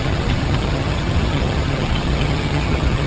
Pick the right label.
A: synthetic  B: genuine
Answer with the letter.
A